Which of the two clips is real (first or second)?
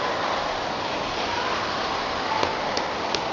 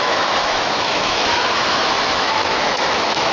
first